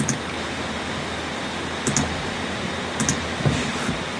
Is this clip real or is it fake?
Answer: real